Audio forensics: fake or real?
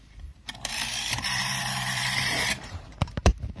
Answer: fake